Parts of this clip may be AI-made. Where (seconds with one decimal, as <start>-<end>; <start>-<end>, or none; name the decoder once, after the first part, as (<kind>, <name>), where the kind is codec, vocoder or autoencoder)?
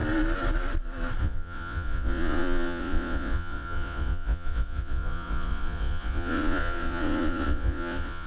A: 1.2-8.3 (vocoder, Vocos)